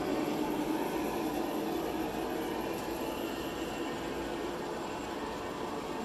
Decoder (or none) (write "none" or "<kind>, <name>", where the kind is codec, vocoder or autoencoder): none